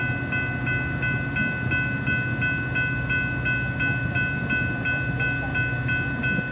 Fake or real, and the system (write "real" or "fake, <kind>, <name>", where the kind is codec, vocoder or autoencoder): real